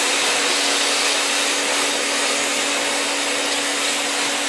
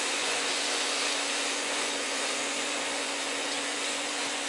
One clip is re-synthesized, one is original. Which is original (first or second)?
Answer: first